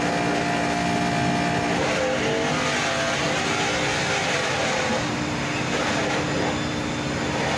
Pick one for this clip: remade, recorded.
recorded